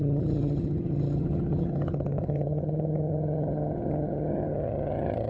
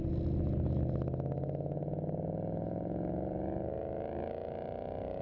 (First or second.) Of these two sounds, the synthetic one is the first